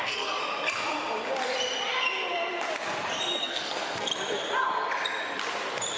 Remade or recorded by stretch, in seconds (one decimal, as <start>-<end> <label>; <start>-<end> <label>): 0.0-0.4 remade; 0.4-3.4 recorded; 3.4-4.1 remade; 4.1-6.0 recorded